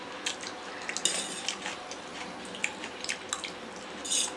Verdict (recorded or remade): recorded